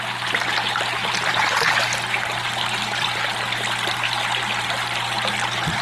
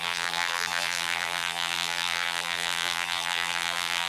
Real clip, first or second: first